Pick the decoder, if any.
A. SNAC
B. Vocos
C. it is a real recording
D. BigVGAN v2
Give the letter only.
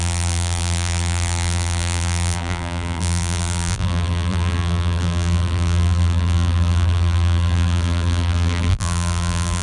D